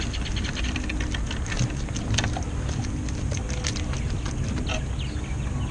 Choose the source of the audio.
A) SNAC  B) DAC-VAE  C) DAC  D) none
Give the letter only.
D